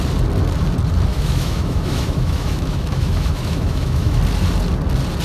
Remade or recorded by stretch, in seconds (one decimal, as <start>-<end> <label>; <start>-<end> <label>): 0.0-1.1 recorded; 1.1-4.2 remade; 4.2-5.2 recorded